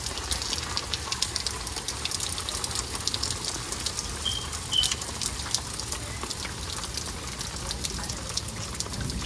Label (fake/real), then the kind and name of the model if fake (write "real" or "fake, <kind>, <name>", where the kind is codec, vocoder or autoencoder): real